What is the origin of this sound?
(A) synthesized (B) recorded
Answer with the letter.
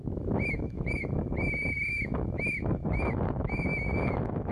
A